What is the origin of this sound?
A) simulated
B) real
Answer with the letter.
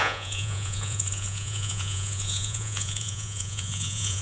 A